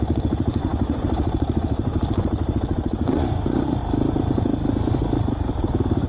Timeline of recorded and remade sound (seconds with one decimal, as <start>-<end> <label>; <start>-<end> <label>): 0.0-3.8 remade; 3.8-6.1 recorded